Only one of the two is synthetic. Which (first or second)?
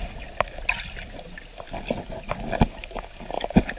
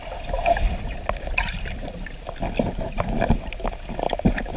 second